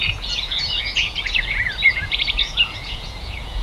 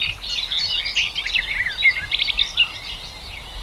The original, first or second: second